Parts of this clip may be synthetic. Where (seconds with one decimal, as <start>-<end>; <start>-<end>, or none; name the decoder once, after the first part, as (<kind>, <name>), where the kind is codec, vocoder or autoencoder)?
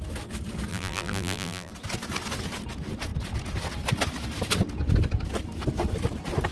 0.7-1.7 (vocoder, BigVGAN v2)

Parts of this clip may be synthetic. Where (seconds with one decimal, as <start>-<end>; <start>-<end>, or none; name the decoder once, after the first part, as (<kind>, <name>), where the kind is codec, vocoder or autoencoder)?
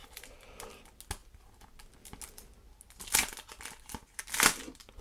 0.0-0.7 (vocoder, BigVGAN v2)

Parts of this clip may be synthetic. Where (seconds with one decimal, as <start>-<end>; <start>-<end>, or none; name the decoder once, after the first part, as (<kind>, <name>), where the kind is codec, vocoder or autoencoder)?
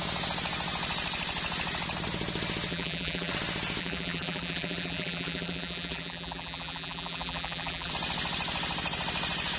2.7-3.3 (vocoder, BigVGAN v2); 3.8-7.9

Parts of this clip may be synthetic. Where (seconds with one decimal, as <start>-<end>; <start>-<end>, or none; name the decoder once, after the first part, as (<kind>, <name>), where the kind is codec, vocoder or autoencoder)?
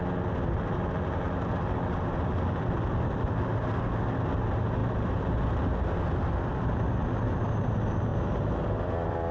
none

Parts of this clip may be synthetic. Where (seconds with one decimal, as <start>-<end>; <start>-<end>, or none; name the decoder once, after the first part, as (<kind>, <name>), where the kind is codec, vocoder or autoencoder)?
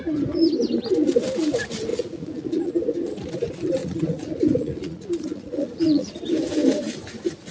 1.9-2.7 (vocoder, Vocos); 3.8-6.1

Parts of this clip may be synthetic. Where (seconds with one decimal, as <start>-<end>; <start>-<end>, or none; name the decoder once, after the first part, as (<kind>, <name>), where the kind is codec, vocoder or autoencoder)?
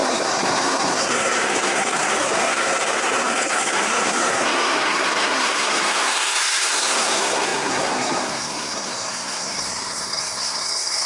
0.0-11.1 (codec, SNAC)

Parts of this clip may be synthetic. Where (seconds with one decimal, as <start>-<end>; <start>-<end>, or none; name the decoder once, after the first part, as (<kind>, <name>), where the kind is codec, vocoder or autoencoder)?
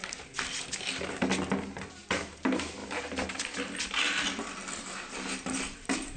none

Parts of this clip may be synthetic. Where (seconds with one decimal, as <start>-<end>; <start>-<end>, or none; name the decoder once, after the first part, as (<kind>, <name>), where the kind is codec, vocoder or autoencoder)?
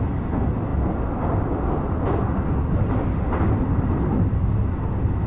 none